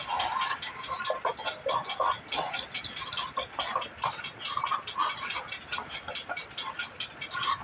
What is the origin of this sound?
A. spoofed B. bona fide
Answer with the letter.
B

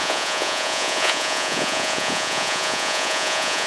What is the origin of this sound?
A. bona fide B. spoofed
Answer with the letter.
B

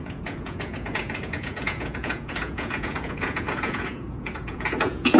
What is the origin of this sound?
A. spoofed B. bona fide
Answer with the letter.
A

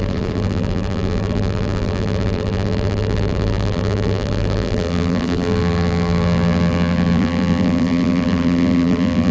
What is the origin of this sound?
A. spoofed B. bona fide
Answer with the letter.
A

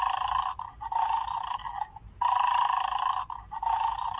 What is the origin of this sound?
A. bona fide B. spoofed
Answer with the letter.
A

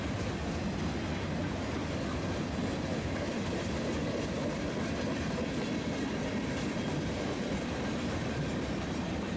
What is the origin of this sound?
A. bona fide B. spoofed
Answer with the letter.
A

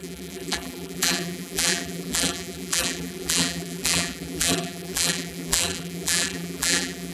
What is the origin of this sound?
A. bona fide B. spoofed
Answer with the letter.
B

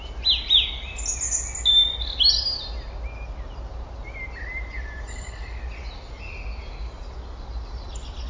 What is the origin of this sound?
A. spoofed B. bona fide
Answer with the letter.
B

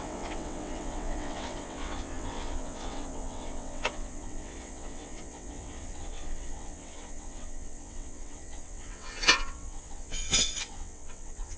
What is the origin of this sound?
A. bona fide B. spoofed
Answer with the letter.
B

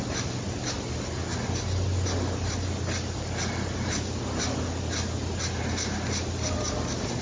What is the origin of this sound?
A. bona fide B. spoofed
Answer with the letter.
A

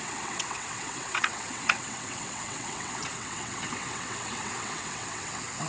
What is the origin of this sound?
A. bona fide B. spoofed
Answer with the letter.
B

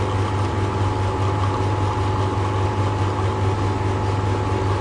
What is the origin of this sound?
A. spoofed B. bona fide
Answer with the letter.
B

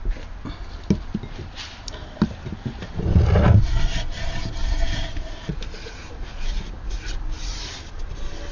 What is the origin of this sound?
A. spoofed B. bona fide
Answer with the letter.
B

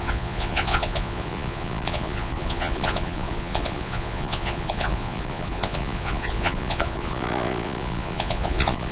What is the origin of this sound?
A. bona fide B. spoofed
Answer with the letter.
B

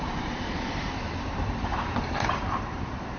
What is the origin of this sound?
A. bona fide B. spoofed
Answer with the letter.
B